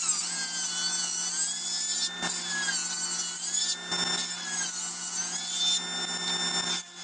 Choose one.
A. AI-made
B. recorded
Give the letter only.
B